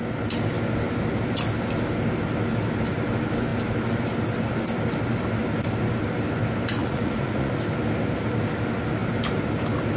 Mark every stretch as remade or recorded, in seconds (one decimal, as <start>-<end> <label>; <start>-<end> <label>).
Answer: 0.0-6.8 recorded; 6.8-7.5 remade; 7.5-10.0 recorded